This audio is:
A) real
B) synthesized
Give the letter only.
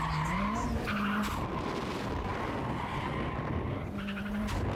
A